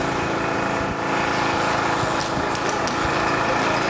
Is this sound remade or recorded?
recorded